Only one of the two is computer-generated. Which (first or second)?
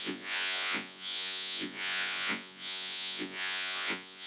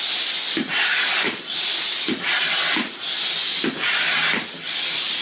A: first